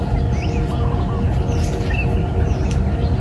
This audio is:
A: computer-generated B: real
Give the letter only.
B